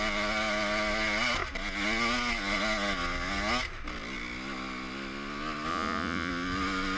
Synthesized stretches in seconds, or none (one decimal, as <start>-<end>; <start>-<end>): 5.7-6.3